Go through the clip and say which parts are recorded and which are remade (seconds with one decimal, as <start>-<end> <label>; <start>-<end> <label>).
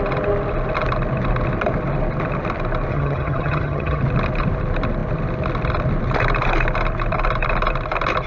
0.0-2.9 recorded; 2.9-4.0 remade; 4.0-8.3 recorded